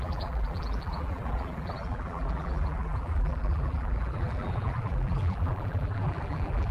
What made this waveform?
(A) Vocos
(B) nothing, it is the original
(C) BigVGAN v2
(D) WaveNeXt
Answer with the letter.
C